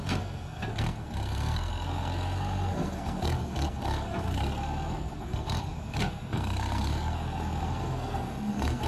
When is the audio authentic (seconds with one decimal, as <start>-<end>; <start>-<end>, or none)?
none